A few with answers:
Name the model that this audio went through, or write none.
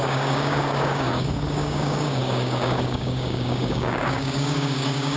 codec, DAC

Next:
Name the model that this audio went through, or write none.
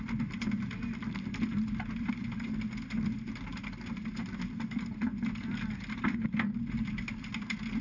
none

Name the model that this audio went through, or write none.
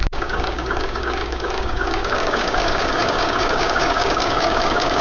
codec, DAC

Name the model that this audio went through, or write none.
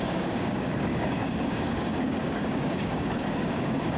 codec, DAC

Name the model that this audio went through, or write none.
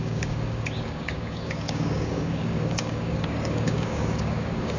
codec, DAC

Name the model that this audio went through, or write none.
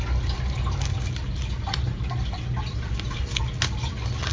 none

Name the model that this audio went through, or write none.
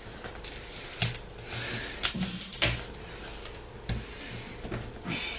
none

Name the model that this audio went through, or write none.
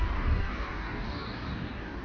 codec, DAC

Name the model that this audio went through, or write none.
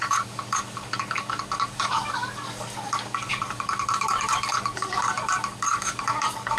codec, DAC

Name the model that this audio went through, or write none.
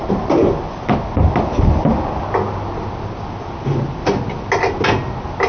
none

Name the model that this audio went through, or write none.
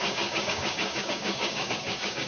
codec, DAC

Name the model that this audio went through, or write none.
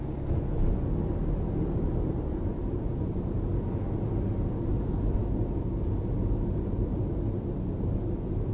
none